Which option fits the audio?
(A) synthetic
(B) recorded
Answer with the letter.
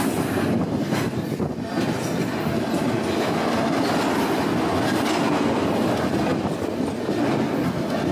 B